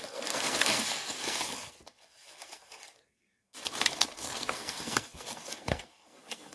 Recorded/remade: remade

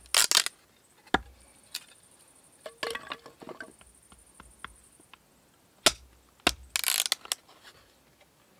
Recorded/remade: recorded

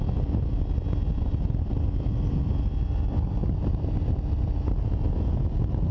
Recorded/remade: recorded